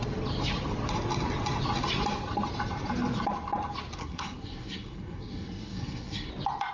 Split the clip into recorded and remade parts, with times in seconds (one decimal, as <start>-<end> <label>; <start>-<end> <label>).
0.0-4.0 recorded; 4.0-6.3 remade; 6.3-6.7 recorded